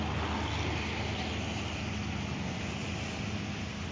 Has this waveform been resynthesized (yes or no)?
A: no